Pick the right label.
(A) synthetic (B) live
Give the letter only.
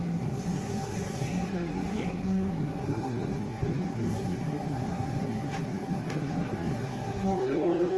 A